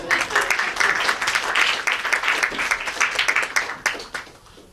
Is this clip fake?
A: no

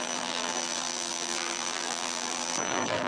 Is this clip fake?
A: yes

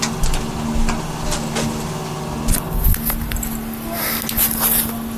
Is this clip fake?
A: no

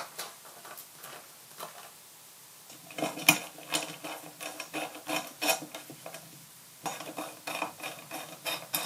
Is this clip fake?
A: no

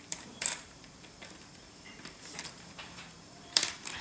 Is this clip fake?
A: yes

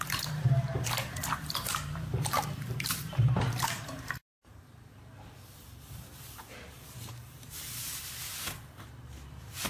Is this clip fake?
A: yes